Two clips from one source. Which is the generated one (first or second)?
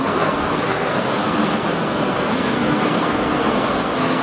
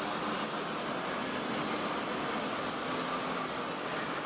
first